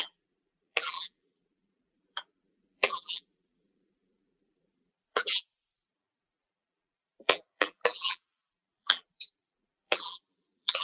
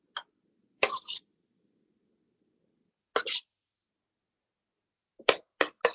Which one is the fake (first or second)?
first